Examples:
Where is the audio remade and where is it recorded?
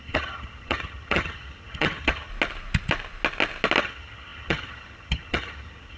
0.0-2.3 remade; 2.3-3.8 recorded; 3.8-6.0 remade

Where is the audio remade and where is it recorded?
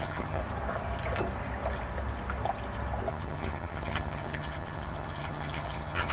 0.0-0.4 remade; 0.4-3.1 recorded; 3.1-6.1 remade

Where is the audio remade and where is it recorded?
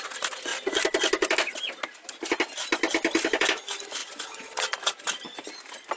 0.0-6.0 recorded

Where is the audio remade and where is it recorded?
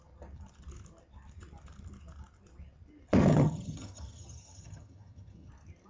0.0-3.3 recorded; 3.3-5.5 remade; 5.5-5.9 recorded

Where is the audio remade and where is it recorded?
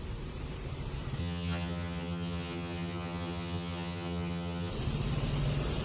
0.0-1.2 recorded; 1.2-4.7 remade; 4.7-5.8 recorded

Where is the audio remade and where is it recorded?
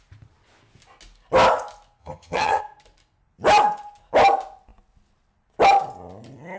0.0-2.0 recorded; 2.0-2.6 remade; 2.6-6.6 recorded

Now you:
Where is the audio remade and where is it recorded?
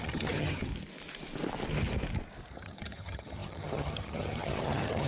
0.0-0.7 remade; 0.7-2.5 recorded; 2.5-5.1 remade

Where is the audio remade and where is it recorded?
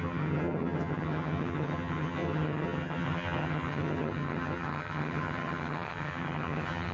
0.0-6.9 remade